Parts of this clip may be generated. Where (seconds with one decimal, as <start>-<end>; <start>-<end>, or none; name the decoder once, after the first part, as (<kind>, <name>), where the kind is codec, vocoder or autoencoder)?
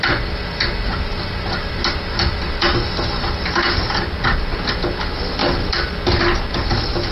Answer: none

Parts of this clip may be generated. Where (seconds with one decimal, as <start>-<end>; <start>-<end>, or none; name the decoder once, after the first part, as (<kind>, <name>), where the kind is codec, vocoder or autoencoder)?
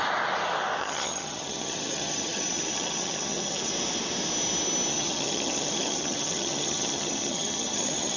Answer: 0.8-3.7 (vocoder, HiFi-GAN); 4.9-8.2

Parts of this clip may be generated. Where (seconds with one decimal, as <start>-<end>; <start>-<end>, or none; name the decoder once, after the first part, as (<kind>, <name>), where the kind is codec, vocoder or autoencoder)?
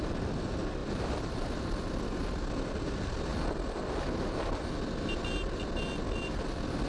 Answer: 0.8-1.9 (vocoder, BigVGAN v2); 3.3-4.7